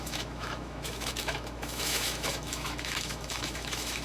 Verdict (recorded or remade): remade